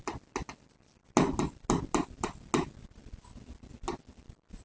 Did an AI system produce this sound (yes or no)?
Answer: no